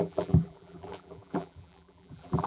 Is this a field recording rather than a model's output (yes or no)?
no